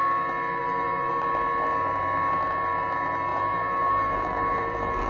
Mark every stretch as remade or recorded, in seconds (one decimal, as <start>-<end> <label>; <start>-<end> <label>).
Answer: 0.0-0.6 recorded; 0.6-1.1 remade; 1.1-3.3 recorded; 3.3-5.1 remade